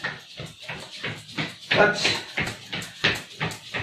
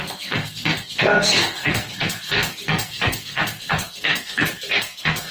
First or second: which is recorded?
first